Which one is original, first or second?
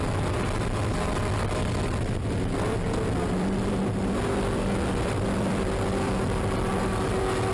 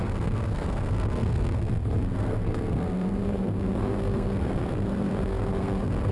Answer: first